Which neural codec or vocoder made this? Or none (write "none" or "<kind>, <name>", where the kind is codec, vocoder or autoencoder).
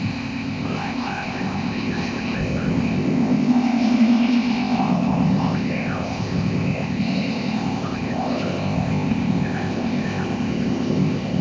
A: codec, ZipCodec